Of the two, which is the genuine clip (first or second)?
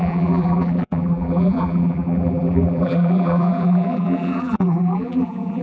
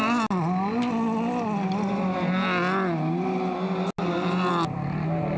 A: second